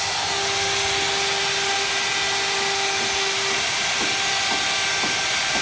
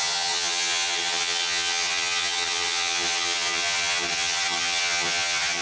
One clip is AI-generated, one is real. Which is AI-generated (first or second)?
second